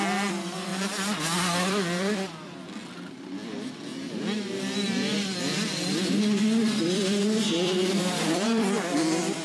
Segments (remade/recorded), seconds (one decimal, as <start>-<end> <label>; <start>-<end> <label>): 0.0-0.7 remade; 0.7-1.7 recorded; 1.7-5.3 remade; 5.3-6.2 recorded; 6.2-9.4 remade